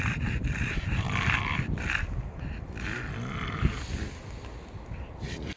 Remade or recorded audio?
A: recorded